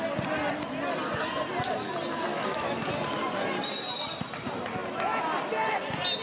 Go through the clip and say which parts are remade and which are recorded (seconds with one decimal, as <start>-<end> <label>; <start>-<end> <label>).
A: 0.0-2.3 recorded; 2.3-2.9 remade; 2.9-6.2 recorded